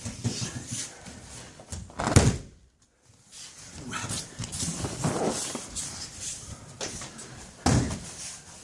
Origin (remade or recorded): recorded